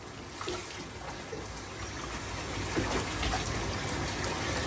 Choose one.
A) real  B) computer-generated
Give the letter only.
A